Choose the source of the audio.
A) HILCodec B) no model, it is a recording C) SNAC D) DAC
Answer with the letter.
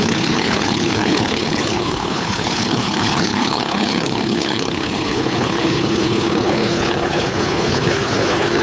A